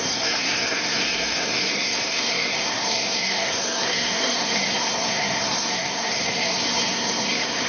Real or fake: fake